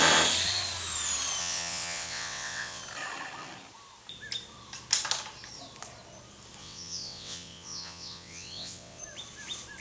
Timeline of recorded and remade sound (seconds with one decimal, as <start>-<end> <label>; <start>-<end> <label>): 0.0-1.4 recorded; 1.4-2.8 remade; 2.8-6.6 recorded; 6.6-9.0 remade; 9.0-9.8 recorded